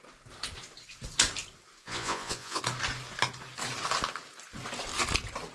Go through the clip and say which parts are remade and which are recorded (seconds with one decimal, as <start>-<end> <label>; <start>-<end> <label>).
0.0-1.8 recorded; 1.8-2.6 remade; 2.6-5.5 recorded